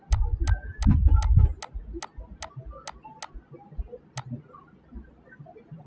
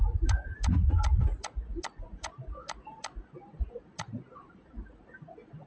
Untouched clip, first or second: first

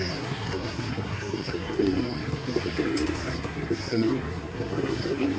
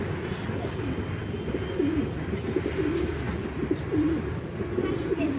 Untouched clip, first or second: second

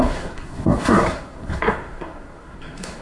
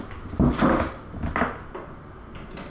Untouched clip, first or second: second